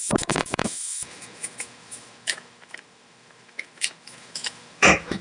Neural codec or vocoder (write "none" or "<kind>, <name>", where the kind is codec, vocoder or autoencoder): autoencoder, DAC-VAE